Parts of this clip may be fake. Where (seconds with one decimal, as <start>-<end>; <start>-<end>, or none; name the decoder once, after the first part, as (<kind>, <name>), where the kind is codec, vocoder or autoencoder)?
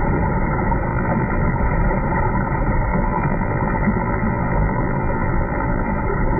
0.9-1.6 (vocoder, BigVGAN v2); 2.9-6.0